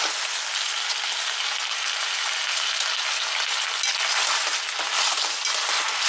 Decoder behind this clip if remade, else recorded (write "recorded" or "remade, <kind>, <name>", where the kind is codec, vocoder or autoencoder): recorded